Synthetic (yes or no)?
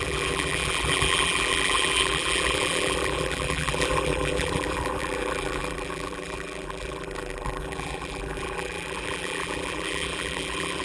yes